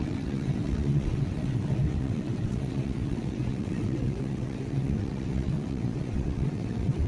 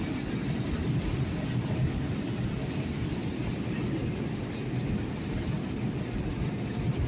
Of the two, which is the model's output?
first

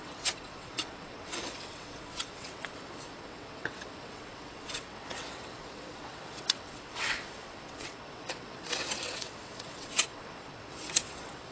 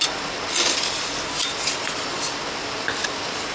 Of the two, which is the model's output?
first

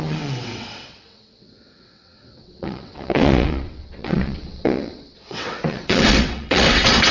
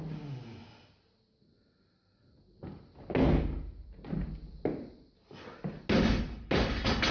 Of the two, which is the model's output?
first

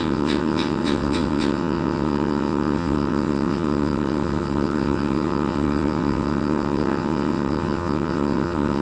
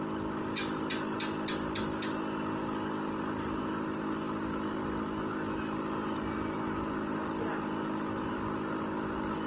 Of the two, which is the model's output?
first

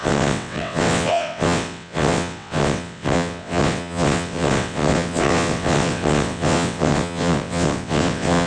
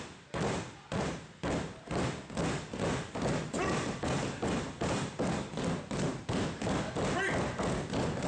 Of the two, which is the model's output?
first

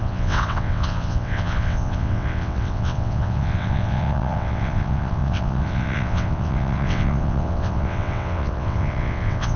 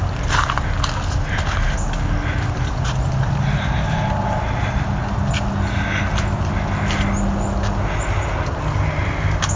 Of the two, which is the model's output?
first